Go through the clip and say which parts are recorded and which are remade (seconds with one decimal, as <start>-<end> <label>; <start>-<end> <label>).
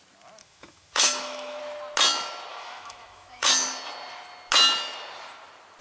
0.0-0.4 recorded; 0.4-1.6 remade; 1.6-2.5 recorded; 2.5-3.5 remade; 3.5-5.8 recorded